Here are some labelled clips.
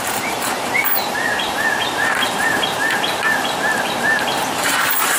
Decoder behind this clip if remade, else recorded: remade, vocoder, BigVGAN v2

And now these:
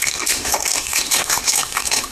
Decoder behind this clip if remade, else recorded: remade, autoencoder, DAC-VAE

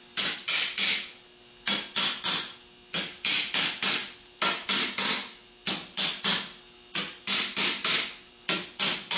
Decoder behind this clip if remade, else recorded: recorded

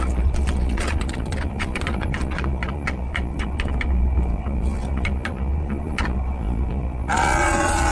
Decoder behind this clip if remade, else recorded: remade, vocoder, Vocos